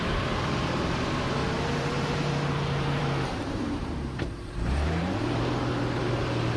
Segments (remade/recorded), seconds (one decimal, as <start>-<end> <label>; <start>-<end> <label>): 0.0-1.4 recorded; 1.4-5.4 remade; 5.4-6.6 recorded